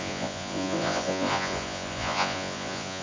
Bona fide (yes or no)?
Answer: no